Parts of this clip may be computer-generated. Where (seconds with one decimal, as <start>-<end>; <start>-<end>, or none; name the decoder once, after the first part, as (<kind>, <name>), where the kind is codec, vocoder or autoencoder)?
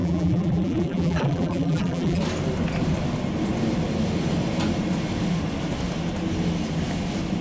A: 0.0-2.2 (vocoder, BigVGAN v2)